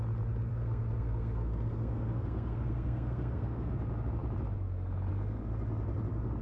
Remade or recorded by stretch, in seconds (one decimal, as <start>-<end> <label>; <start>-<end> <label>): 0.0-0.5 recorded; 0.5-3.7 remade; 3.7-6.4 recorded